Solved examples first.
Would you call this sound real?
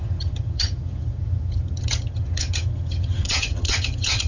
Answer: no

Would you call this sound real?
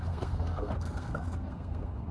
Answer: no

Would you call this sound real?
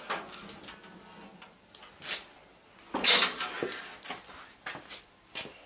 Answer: yes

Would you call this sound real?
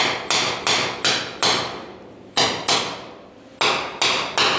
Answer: yes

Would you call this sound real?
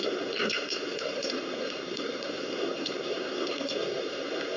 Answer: no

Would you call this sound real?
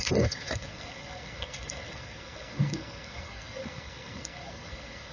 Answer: no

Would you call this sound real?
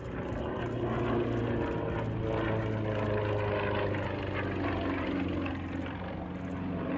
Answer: yes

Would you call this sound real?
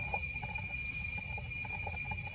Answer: yes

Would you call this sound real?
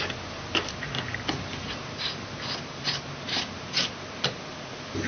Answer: yes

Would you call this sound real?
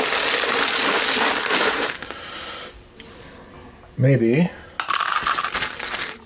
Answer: yes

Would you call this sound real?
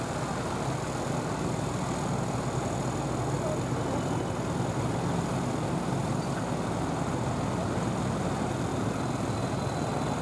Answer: yes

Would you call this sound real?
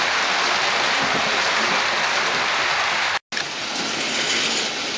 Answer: yes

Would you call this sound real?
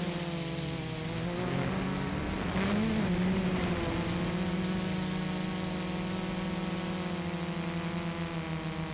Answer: yes